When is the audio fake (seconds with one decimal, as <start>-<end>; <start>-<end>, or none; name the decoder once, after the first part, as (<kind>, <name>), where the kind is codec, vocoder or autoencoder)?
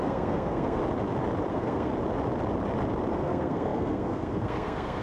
0.0-0.8 (codec, SNAC); 1.5-1.9; 3.1-5.0